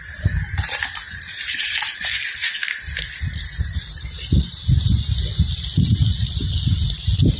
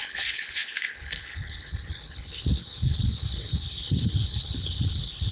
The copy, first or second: second